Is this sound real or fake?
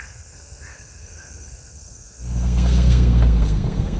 fake